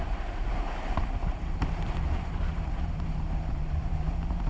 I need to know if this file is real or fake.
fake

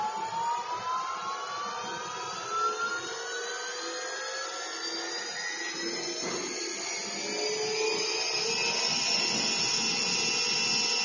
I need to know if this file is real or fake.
real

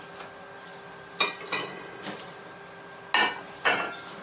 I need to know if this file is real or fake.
real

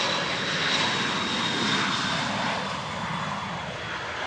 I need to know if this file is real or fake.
real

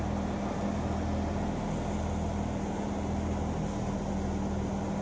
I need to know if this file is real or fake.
real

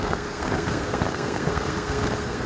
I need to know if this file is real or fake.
fake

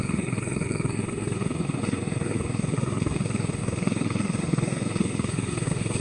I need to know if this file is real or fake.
fake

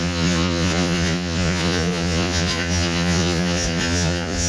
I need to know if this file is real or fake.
fake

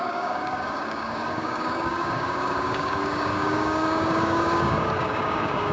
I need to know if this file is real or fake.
fake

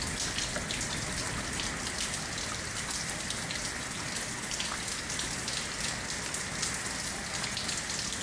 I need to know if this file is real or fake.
real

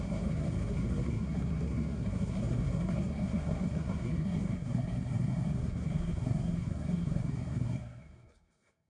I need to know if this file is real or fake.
fake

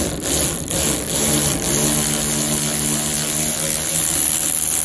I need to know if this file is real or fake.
real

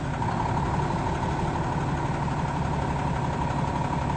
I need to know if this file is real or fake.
real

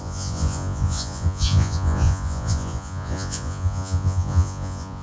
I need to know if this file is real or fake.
fake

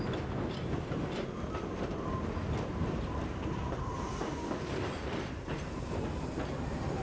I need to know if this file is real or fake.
fake